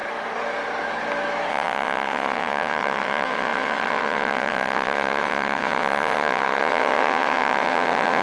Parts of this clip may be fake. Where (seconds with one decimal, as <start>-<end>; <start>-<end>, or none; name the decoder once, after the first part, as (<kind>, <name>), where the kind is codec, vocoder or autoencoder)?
1.5-8.2 (vocoder, WaveNeXt)